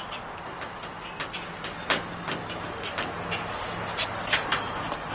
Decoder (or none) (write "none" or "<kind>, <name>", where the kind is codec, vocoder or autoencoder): none